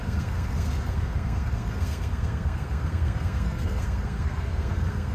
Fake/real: fake